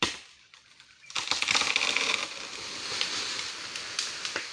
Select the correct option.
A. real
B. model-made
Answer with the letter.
B